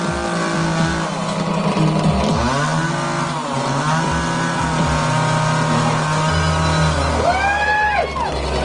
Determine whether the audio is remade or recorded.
recorded